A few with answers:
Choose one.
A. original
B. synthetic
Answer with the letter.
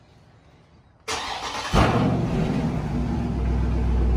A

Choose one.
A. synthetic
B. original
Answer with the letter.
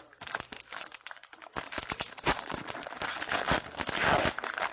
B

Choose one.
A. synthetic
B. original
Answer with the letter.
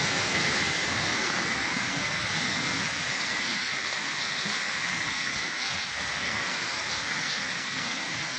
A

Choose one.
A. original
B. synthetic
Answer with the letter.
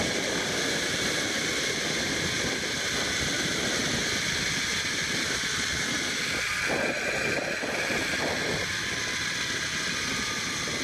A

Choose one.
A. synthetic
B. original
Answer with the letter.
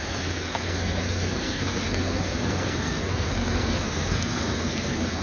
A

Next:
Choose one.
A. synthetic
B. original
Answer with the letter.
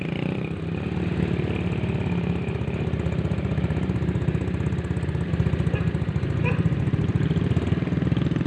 B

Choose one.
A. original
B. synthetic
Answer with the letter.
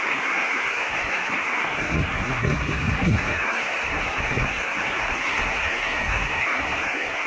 B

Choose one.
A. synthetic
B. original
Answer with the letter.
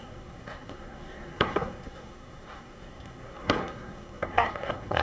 A